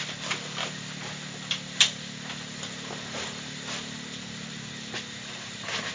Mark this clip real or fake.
real